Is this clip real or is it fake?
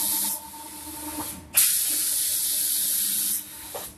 real